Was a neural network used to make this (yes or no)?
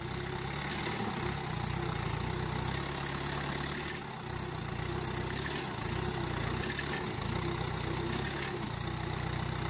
no